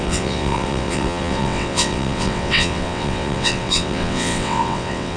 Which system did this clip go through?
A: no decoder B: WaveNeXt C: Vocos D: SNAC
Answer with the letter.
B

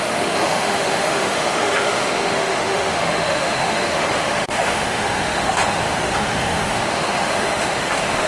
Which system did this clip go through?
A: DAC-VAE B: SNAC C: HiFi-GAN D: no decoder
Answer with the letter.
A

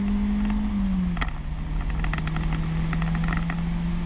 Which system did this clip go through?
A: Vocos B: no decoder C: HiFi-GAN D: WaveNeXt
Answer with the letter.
B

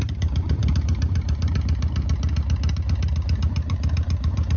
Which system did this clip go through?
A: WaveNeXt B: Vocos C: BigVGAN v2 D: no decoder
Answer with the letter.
C